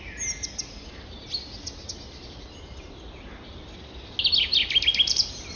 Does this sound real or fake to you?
real